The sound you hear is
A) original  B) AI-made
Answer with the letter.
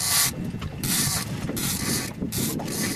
A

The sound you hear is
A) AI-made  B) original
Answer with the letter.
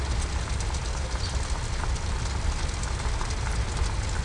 B